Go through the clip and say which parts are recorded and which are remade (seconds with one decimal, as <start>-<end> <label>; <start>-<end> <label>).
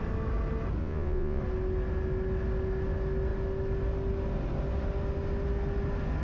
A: 0.0-0.8 recorded; 0.8-1.4 remade; 1.4-6.2 recorded